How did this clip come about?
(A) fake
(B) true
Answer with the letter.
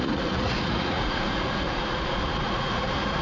A